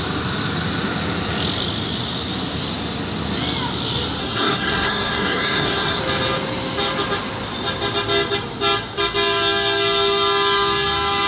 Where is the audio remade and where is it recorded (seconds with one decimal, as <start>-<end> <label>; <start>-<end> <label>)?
0.0-4.2 recorded; 4.2-6.0 remade; 6.0-11.3 recorded